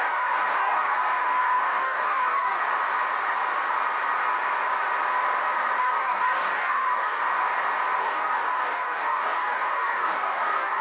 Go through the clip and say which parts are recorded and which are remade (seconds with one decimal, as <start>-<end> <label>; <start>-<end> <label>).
0.0-2.6 remade; 2.6-5.8 recorded; 5.8-7.2 remade; 7.2-8.0 recorded; 8.0-10.8 remade